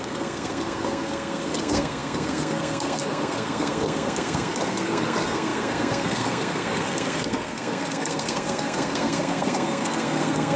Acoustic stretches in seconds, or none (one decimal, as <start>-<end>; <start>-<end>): none